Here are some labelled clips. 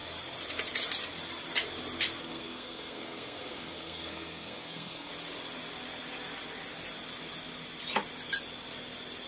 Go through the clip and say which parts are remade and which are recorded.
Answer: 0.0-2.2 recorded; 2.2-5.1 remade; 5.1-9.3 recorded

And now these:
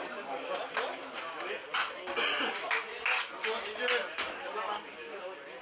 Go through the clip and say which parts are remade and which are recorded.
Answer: 0.0-0.9 remade; 0.9-4.3 recorded; 4.3-5.6 remade

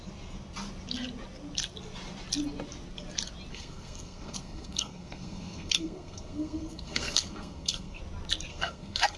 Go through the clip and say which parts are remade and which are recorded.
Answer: 0.0-3.5 recorded; 3.5-8.0 remade; 8.0-8.5 recorded; 8.5-9.2 remade

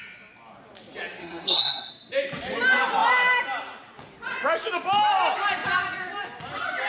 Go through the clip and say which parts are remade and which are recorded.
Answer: 0.0-1.2 recorded; 1.2-1.9 remade; 1.9-6.9 recorded

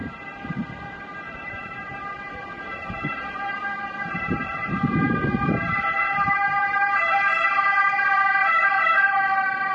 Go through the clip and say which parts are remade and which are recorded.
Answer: 0.0-9.7 remade

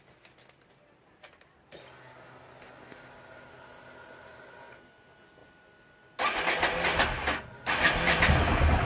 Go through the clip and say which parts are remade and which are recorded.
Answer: 0.0-8.8 recorded

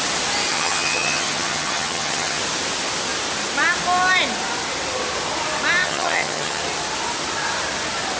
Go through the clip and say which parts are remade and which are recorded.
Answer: 0.0-0.5 recorded; 0.5-2.4 remade; 2.4-5.8 recorded; 5.8-6.6 remade; 6.6-8.2 recorded